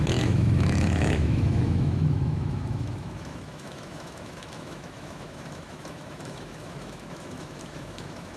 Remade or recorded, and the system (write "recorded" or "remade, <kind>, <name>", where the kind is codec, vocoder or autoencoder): remade, autoencoder, DAC-VAE